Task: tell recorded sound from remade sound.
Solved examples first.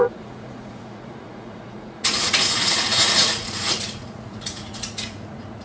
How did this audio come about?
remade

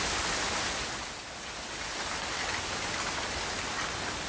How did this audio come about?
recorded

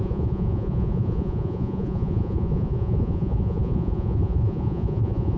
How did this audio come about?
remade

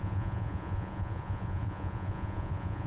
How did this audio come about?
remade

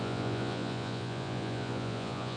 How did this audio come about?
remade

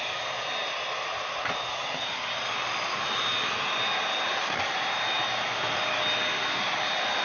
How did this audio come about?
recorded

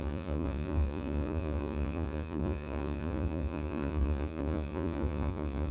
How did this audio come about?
remade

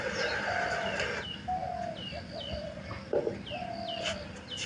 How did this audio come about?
recorded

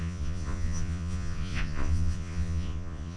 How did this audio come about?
remade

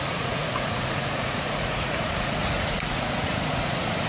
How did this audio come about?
remade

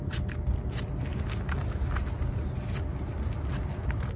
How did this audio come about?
recorded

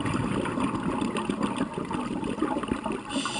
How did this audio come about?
recorded